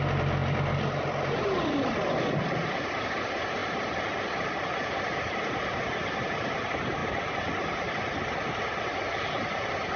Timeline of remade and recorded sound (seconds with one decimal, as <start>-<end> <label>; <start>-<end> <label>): 0.0-10.0 recorded